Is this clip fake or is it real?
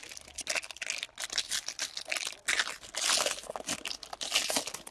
real